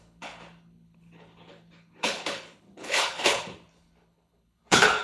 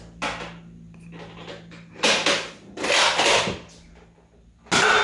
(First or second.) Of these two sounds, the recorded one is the second